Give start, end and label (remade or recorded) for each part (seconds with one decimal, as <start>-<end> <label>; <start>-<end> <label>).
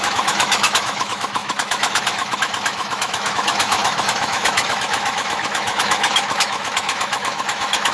0.0-7.9 remade